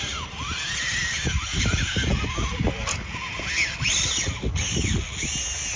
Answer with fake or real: real